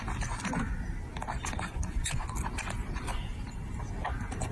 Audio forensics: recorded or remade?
recorded